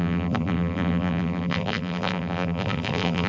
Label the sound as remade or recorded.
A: remade